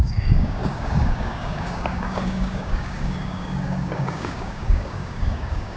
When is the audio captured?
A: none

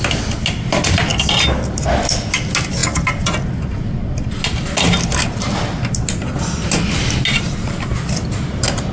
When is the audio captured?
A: 0.0-8.9